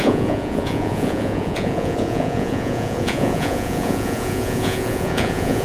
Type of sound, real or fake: fake